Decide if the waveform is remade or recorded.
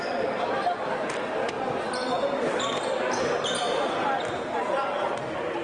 recorded